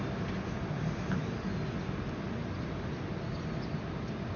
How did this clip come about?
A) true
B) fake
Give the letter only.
A